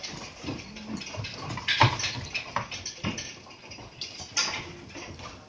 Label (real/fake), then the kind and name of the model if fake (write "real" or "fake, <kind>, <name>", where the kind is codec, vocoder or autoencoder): real